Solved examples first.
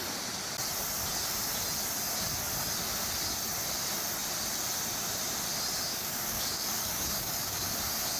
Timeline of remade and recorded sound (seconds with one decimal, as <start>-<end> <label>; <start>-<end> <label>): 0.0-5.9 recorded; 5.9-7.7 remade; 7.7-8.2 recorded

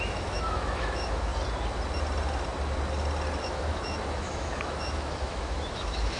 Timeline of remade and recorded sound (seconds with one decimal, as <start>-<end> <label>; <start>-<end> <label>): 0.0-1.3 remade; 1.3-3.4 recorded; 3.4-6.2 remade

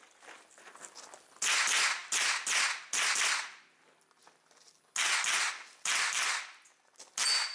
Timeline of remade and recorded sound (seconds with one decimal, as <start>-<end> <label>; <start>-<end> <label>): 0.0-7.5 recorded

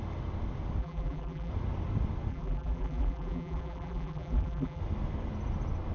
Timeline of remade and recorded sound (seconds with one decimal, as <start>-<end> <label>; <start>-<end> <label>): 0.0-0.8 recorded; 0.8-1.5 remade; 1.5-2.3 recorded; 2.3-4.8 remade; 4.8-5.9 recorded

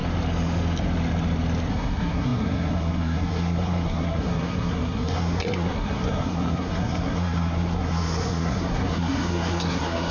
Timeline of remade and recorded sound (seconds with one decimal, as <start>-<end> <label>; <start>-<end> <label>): 0.0-1.7 recorded; 1.7-10.1 remade

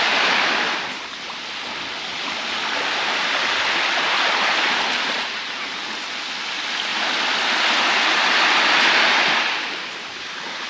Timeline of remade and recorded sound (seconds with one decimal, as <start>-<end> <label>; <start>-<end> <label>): 0.0-10.7 recorded